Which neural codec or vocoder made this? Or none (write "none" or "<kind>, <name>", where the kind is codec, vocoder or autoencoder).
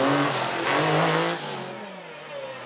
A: none